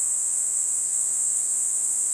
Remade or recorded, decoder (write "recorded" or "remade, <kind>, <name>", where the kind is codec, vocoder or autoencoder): remade, vocoder, Vocos